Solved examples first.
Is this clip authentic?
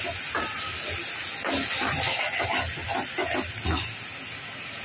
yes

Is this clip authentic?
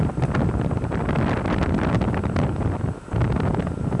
yes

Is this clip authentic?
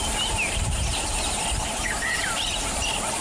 yes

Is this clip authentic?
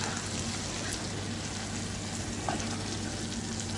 yes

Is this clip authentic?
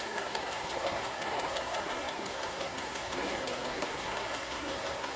no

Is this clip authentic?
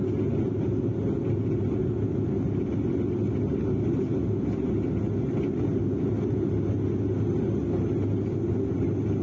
yes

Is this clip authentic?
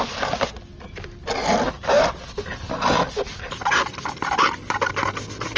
yes